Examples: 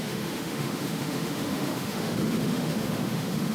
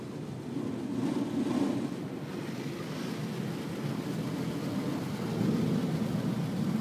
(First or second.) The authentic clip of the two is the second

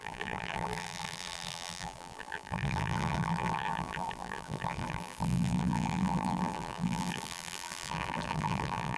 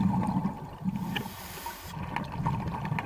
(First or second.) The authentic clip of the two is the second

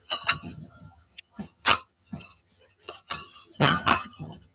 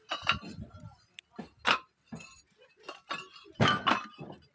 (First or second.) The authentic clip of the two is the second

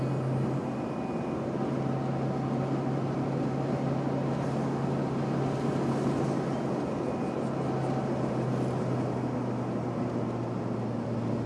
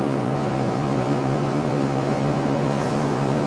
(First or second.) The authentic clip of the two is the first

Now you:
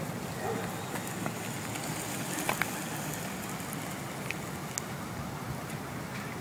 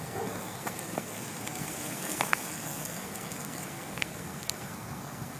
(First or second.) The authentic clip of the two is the first